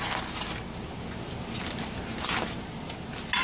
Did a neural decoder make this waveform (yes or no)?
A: no